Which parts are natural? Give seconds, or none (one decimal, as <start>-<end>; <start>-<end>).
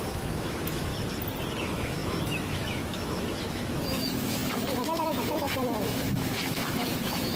0.9-1.6